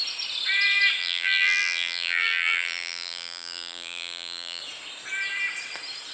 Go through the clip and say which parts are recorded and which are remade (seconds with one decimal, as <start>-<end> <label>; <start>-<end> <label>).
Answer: 0.0-1.0 recorded; 1.0-4.6 remade; 4.6-6.1 recorded